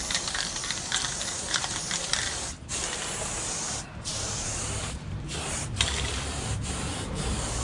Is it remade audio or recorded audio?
remade